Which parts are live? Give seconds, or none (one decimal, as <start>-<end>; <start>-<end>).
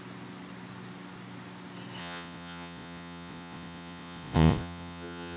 0.0-2.0